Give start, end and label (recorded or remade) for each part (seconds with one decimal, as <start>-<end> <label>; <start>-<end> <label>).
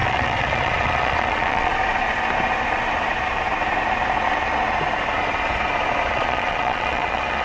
0.0-1.7 remade; 1.7-6.1 recorded; 6.1-7.4 remade